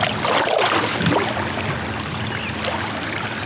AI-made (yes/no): no